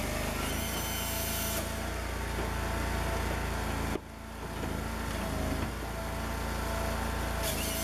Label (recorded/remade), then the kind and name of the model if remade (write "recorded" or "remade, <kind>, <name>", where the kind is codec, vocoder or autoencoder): recorded